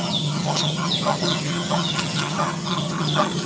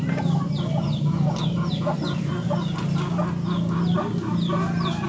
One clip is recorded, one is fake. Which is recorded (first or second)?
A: second